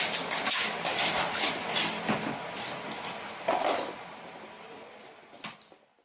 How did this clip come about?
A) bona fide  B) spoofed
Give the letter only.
A